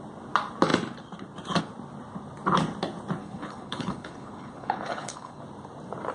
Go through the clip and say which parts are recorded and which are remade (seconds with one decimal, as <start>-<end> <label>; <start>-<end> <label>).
0.0-3.2 recorded; 3.2-5.4 remade; 5.4-6.1 recorded